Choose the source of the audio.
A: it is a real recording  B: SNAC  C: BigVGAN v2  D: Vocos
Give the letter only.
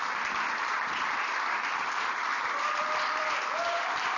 C